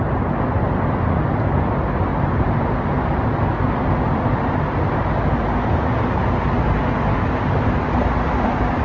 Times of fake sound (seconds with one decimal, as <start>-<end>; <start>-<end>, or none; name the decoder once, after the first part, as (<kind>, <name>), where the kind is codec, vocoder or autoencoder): none